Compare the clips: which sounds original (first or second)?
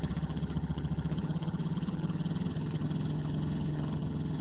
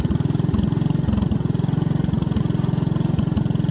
second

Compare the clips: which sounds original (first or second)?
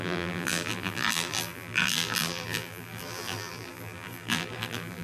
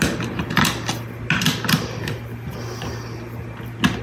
second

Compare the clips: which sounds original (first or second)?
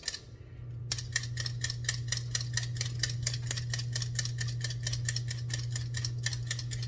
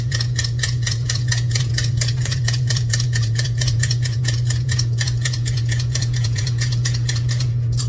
first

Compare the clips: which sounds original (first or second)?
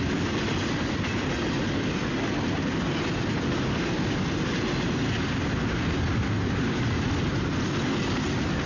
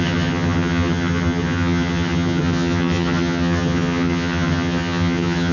first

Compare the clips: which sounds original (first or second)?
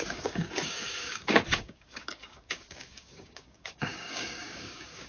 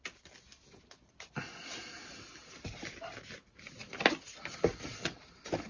second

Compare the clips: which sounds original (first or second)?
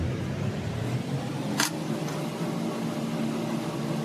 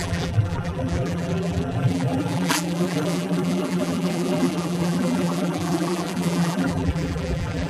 first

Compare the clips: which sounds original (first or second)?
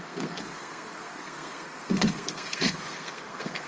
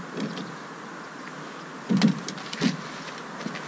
second